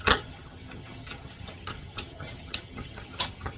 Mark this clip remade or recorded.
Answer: remade